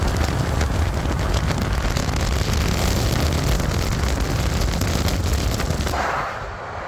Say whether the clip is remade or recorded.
recorded